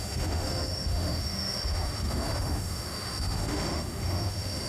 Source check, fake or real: fake